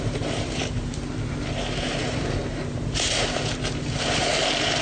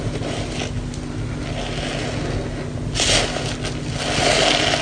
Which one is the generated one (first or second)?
first